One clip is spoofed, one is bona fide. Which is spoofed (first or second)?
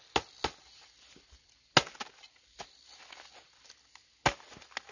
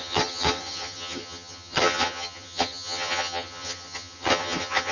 second